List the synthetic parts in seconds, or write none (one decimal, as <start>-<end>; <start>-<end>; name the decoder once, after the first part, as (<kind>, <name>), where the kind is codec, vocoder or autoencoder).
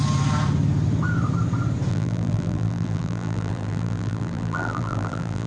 1.9-5.5 (vocoder, BigVGAN v2)